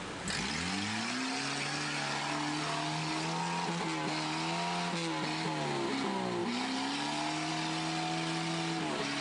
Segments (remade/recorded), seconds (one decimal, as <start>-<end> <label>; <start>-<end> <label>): 0.0-9.2 recorded